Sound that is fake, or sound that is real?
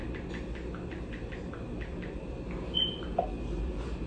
real